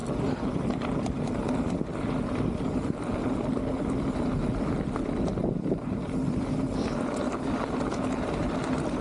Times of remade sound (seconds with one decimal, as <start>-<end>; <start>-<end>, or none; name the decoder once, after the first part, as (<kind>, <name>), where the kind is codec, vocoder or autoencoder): 5.4-6.0 (vocoder, BigVGAN v2)